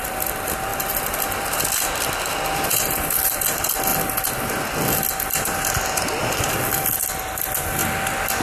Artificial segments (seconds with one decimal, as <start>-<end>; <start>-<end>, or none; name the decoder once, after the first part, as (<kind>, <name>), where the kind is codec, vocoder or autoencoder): 0.0-3.9 (vocoder, BigVGAN v2); 6.2-7.8